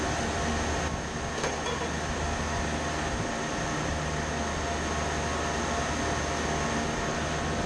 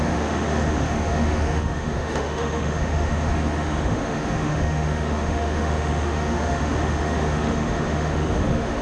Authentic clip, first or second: first